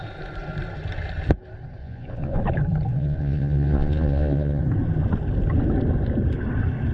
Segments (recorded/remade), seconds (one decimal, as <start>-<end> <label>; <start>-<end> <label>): 0.0-1.8 recorded; 1.8-2.4 remade; 2.4-2.9 recorded; 2.9-4.6 remade; 4.6-6.9 recorded